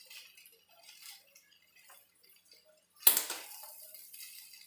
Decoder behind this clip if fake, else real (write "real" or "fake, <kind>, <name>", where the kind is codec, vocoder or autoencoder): real